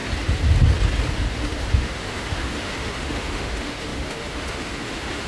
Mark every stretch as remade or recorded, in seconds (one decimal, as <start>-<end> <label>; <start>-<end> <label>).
0.0-1.1 recorded; 1.1-5.3 remade